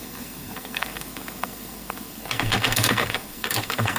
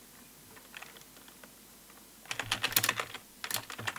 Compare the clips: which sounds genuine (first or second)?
second